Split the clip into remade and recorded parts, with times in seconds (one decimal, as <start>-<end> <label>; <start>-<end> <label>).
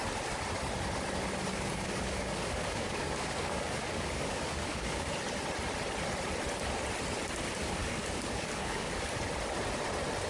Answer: 0.0-1.5 recorded; 1.5-5.1 remade; 5.1-7.8 recorded; 7.8-9.1 remade; 9.1-10.3 recorded